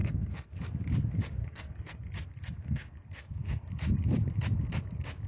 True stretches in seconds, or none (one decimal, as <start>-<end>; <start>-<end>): 0.6-1.4; 2.0-2.6; 3.7-5.3